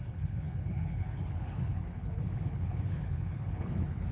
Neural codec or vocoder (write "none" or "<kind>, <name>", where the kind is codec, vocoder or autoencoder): codec, HILCodec